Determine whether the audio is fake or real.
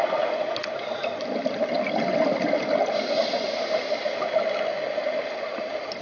real